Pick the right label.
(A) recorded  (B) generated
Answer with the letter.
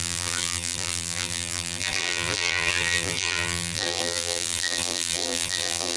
B